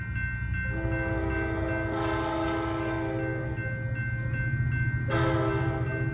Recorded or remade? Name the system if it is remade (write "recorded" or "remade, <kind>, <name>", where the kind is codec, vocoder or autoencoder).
recorded